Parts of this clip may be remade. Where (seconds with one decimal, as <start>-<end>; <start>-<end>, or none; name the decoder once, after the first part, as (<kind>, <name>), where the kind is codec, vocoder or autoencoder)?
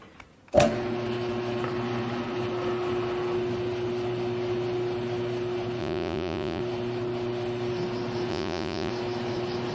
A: 5.8-6.6 (vocoder, Vocos); 8.3-8.9